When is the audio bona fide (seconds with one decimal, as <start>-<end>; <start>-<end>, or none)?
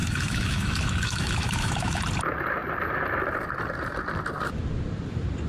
2.0-5.5